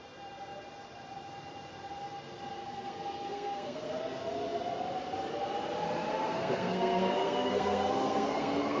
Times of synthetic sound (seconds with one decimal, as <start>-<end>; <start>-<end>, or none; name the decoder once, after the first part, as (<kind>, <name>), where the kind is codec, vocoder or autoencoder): 2.6-3.9 (codec, SNAC); 6.1-8.8